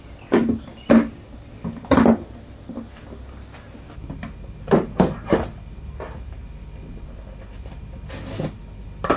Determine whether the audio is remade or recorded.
recorded